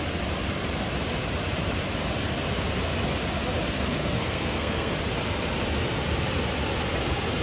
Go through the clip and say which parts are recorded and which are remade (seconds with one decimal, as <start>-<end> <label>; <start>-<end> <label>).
0.0-4.0 recorded; 4.0-4.9 remade; 4.9-7.4 recorded